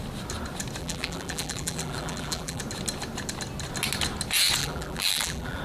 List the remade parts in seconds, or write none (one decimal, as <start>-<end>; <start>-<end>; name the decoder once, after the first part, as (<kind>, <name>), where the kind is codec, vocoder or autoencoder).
0.8-2.6 (vocoder, BigVGAN v2); 4.6-5.6

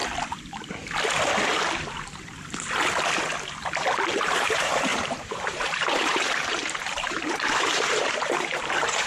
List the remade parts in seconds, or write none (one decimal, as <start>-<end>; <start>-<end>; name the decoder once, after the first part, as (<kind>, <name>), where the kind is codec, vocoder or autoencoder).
4.2-9.1 (vocoder, BigVGAN v2)

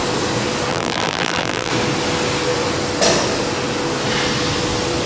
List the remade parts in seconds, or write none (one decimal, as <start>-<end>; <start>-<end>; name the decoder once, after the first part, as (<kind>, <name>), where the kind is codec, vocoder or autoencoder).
0.7-1.7 (vocoder, BigVGAN v2)

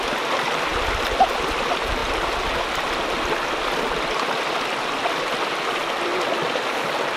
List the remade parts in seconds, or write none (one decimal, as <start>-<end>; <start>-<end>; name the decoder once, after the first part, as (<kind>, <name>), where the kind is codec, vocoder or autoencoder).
none

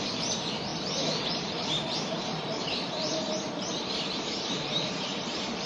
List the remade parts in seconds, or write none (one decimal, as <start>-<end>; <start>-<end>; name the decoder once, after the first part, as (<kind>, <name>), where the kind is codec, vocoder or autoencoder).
0.0-5.7 (vocoder, BigVGAN v2)

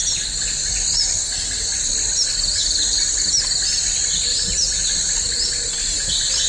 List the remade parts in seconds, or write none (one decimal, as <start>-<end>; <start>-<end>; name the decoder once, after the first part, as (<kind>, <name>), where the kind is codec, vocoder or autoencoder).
4.3-4.8 (vocoder, BigVGAN v2)

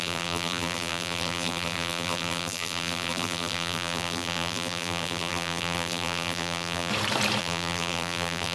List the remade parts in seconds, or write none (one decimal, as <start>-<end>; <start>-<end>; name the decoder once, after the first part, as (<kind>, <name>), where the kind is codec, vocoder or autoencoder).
0.0-6.9 (vocoder, BigVGAN v2); 7.4-8.5